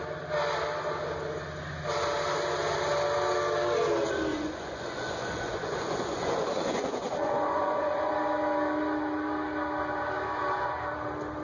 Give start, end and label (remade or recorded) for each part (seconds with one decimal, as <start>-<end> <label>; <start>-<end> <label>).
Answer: 0.0-4.3 recorded; 4.3-8.1 remade; 8.1-11.4 recorded